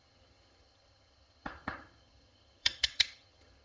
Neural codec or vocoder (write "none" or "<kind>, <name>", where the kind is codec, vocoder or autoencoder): vocoder, HiFi-GAN